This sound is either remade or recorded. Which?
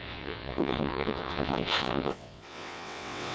remade